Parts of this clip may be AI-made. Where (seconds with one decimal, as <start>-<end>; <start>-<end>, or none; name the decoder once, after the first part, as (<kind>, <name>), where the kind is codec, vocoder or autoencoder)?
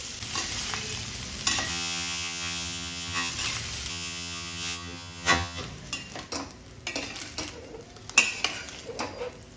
1.7-3.3 (vocoder, HiFi-GAN); 3.9-5.6